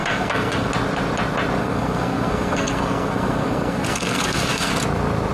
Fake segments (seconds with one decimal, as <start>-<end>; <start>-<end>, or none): 0.0-0.7; 1.6-4.7